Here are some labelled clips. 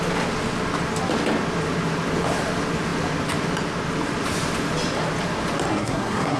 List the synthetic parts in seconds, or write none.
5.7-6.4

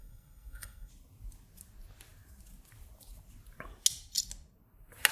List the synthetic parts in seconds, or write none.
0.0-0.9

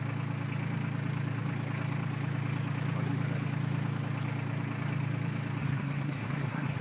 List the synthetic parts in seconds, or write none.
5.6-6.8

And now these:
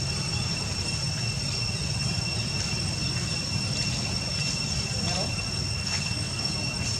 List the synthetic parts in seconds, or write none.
5.8-6.5

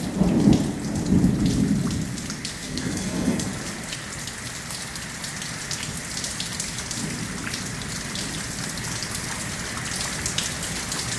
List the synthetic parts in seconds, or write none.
2.6-3.5

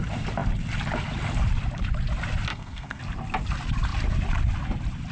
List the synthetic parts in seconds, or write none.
2.5-3.0